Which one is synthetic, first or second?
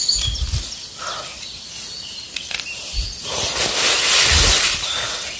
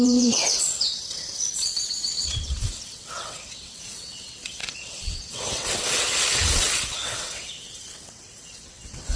second